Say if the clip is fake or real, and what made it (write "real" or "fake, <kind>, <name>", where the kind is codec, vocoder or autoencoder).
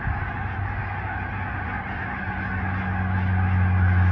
real